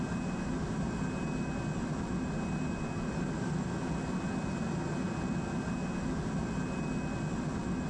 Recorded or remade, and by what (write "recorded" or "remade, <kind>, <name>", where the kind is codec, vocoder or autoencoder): recorded